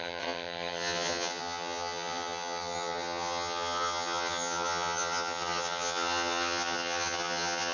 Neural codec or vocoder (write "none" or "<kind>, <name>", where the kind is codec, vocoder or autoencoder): vocoder, HiFi-GAN